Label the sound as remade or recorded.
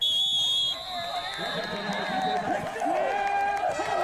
recorded